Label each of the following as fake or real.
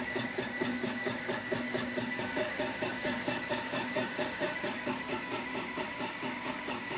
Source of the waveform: fake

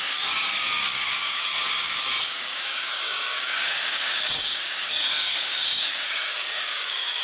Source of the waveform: fake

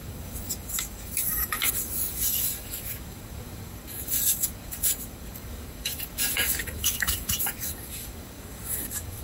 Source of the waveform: fake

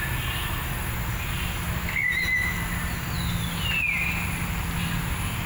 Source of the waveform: real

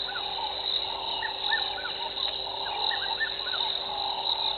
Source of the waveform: real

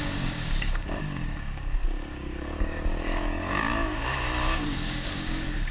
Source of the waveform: fake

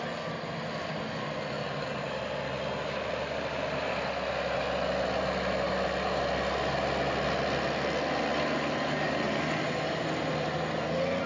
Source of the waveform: real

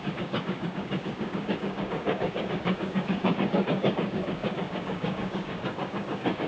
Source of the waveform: fake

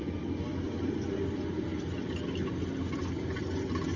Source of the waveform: real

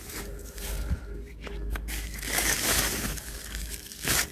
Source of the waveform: fake